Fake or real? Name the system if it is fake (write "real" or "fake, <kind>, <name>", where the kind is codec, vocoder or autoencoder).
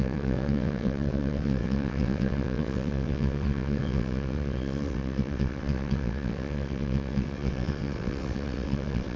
fake, vocoder, WaveNeXt